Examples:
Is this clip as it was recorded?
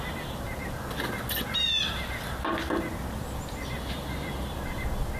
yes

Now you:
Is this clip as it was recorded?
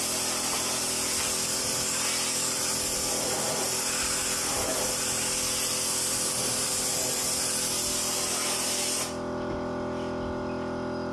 yes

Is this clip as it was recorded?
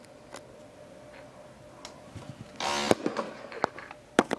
yes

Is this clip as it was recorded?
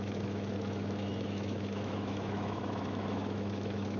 no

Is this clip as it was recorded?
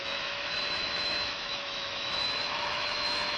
no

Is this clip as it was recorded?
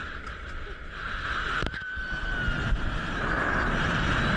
yes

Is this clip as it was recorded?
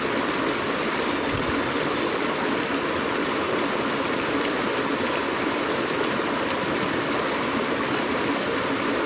yes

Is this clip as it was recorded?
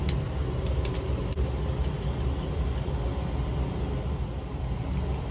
yes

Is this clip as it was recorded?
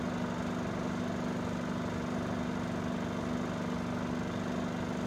yes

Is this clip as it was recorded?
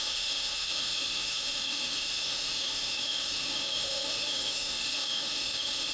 no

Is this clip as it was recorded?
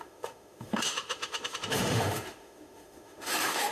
no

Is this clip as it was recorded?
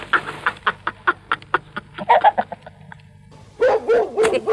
yes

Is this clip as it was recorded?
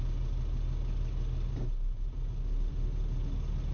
yes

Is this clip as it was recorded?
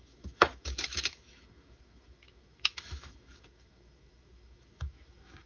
no